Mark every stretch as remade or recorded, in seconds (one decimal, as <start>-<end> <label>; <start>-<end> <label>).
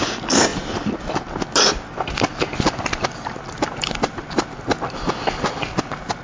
0.0-6.2 recorded